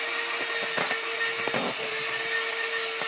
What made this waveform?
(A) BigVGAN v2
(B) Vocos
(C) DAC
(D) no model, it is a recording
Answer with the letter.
D